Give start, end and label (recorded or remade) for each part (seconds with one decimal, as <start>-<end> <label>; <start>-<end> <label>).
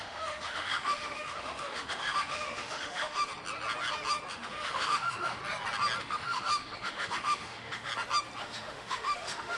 0.0-3.3 remade; 3.3-4.3 recorded; 4.3-5.4 remade; 5.4-6.0 recorded; 6.0-7.9 remade; 7.9-8.4 recorded; 8.4-9.6 remade